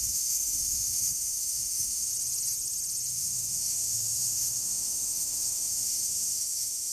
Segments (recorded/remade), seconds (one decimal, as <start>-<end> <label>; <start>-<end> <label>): 0.0-2.1 remade; 2.1-3.1 recorded; 3.1-6.9 remade